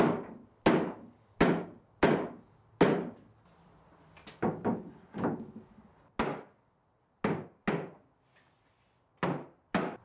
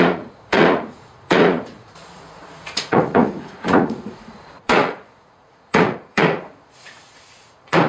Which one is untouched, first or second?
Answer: first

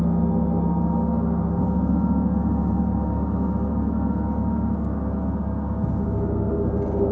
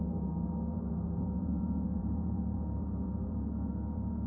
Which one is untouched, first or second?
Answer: first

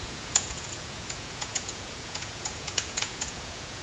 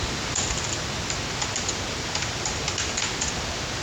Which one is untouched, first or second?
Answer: second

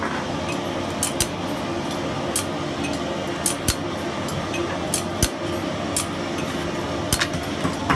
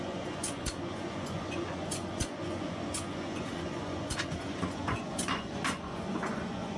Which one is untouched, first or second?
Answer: first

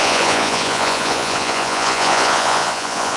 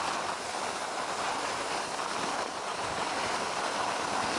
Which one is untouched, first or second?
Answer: second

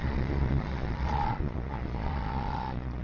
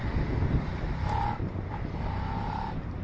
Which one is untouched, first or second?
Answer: second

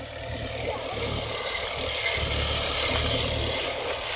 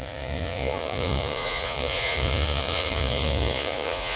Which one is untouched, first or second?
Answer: first